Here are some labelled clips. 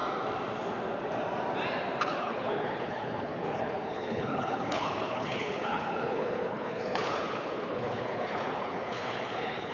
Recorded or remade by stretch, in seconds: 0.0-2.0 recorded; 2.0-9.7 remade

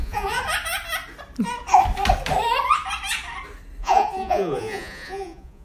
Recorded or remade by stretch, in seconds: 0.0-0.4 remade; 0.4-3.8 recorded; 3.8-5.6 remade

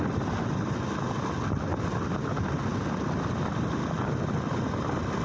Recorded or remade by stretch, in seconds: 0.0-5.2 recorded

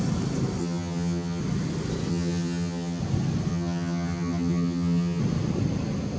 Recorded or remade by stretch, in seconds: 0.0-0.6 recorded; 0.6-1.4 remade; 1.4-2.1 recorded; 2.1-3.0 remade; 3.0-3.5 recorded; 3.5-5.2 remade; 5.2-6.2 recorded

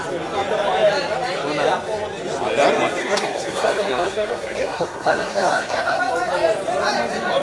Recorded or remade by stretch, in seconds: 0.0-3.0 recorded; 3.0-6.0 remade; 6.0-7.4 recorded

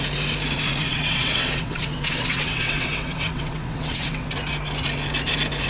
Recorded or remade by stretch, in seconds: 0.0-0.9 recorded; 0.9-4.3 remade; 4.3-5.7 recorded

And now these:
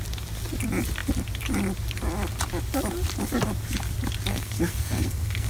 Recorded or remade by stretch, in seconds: 0.0-4.3 recorded; 4.3-5.5 remade

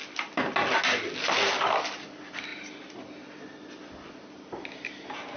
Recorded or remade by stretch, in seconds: 0.0-5.4 recorded